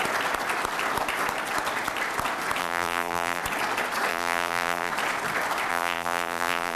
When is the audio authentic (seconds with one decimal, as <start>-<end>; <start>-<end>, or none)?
0.0-2.6; 3.4-4.1; 4.9-5.7